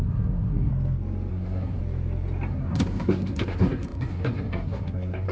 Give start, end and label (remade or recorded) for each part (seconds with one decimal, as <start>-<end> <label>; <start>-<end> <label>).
0.0-0.7 remade; 0.7-1.3 recorded; 1.3-1.8 remade; 1.8-2.5 recorded; 2.5-5.3 remade